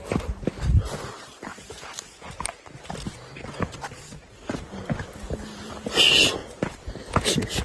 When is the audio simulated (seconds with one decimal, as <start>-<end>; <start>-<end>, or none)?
1.5-4.6